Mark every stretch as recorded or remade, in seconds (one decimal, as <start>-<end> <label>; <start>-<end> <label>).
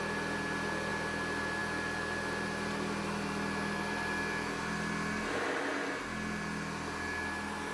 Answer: 0.0-7.7 recorded